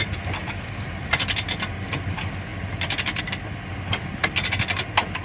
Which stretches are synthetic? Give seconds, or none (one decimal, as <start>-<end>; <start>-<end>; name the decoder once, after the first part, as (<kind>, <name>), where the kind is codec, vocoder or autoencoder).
none

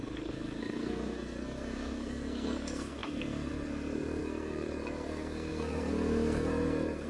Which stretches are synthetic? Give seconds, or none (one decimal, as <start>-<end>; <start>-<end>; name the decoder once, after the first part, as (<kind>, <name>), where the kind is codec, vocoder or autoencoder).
0.0-7.1 (codec, SNAC)